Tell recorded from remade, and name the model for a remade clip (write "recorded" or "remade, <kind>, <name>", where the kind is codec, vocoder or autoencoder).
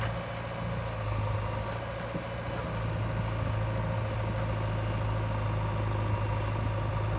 recorded